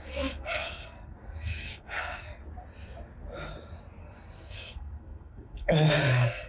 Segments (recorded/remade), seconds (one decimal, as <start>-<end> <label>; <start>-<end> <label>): 0.0-2.4 remade; 2.4-4.0 recorded; 4.0-6.5 remade